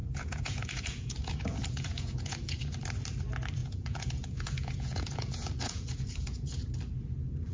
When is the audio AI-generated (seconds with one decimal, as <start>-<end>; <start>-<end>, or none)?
0.0-2.6; 3.6-6.6